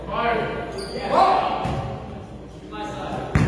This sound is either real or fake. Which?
real